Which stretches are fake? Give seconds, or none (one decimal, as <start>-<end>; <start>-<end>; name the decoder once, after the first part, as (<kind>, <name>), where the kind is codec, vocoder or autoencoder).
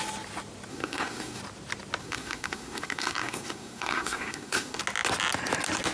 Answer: 0.7-1.4 (codec, SNAC); 2.0-4.8